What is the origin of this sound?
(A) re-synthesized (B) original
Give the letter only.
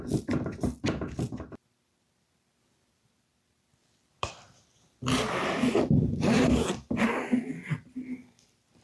A